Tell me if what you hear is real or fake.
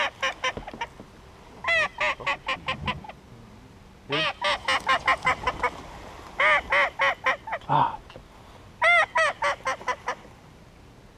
real